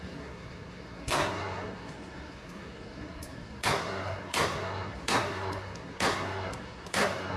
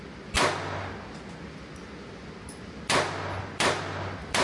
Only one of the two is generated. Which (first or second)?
first